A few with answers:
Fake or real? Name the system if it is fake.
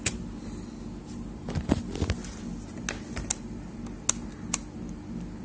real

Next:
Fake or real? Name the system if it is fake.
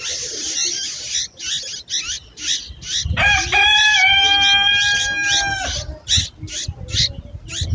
real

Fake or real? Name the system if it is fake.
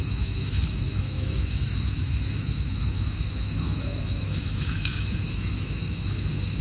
fake, autoencoder, DAC-VAE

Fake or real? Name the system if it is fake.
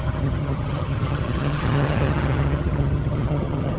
fake, vocoder, HiFi-GAN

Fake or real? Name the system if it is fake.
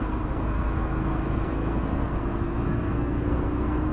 fake, codec, SNAC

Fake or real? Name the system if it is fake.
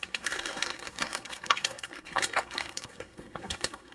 fake, codec, SNAC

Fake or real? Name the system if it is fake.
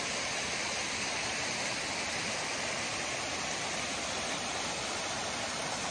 real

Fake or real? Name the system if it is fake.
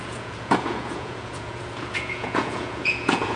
fake, vocoder, Vocos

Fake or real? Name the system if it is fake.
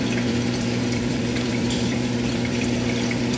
fake, vocoder, BigVGAN v2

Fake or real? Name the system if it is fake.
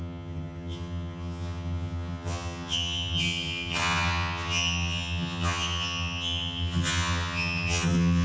fake, vocoder, HiFi-GAN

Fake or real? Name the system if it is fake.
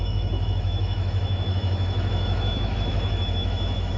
fake, autoencoder, DAC-VAE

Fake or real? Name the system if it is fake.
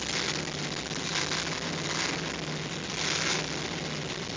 real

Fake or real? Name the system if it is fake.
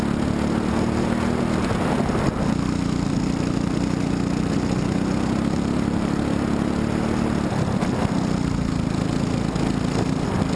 real